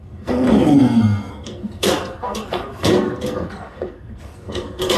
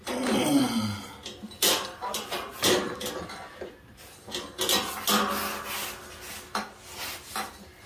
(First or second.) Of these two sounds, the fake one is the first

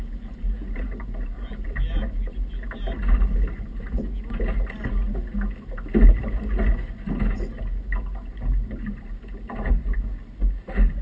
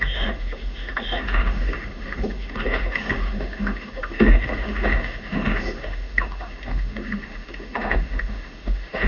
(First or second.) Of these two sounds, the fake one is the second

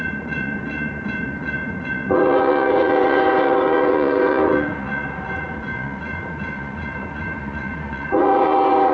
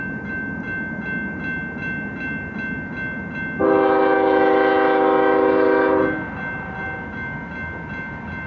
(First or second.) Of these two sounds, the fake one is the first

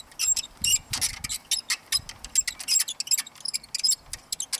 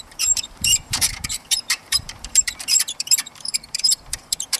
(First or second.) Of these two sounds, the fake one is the second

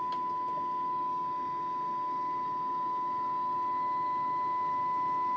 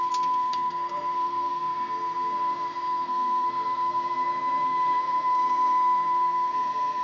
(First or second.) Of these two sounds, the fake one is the second